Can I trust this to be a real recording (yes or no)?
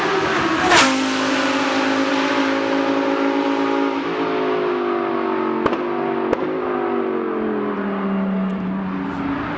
yes